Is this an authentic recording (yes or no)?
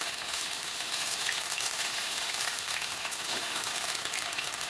no